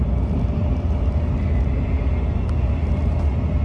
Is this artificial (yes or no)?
no